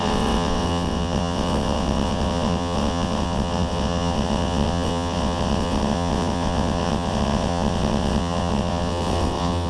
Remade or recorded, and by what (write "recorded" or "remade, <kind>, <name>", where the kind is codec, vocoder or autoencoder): remade, vocoder, WaveNeXt